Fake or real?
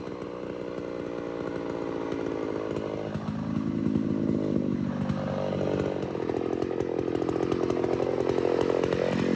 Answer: real